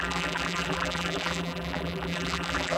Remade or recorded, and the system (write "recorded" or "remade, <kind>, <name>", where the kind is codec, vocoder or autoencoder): remade, vocoder, BigVGAN v2